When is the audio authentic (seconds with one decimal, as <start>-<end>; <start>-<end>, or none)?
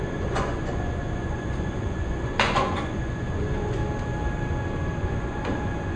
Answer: 3.8-5.0